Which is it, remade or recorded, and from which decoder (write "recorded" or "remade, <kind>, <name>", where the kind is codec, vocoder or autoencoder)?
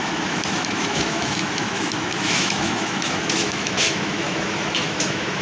remade, autoencoder, DAC-VAE